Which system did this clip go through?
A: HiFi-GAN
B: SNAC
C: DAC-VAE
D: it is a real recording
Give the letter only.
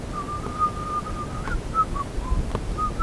D